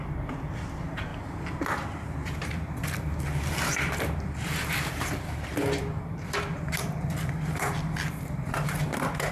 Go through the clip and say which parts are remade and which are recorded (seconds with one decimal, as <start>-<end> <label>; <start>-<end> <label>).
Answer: 0.0-9.3 remade